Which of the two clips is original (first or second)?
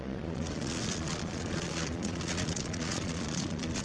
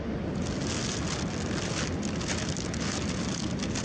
second